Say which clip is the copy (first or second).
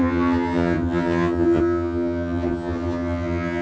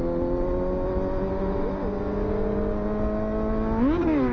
first